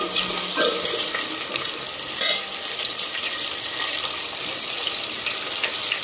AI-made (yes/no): yes